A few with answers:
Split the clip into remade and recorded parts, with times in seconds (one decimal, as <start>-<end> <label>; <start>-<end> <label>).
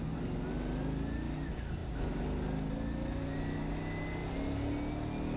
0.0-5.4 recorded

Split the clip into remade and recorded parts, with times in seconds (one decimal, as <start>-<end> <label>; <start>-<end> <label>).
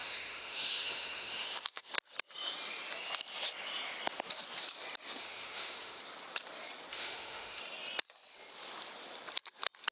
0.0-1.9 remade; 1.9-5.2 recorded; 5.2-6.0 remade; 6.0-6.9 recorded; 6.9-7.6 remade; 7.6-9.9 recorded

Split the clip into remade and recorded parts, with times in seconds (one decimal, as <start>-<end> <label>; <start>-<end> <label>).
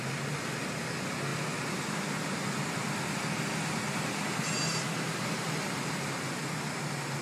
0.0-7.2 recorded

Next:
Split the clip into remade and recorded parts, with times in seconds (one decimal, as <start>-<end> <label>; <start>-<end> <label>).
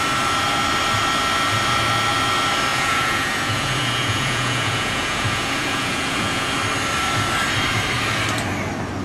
0.0-2.7 recorded; 2.7-6.5 remade; 6.5-9.0 recorded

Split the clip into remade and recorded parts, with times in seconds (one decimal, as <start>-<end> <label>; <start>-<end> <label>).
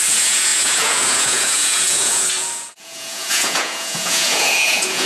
0.0-5.1 remade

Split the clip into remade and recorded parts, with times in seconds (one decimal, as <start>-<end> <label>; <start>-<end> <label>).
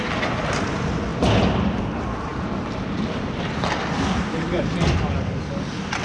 0.0-2.3 recorded; 2.3-4.6 remade; 4.6-6.0 recorded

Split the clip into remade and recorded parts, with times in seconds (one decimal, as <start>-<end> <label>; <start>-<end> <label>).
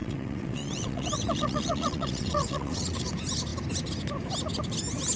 0.0-3.1 remade; 3.1-5.2 recorded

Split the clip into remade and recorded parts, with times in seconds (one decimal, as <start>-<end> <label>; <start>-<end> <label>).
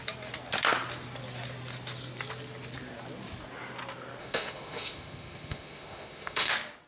0.0-4.2 recorded; 4.2-6.5 remade; 6.5-6.9 recorded